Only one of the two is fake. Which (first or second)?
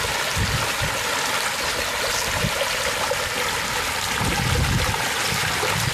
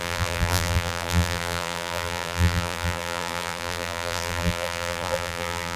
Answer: second